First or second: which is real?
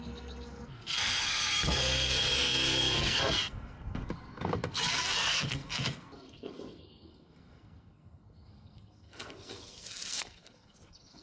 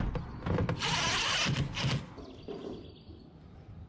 second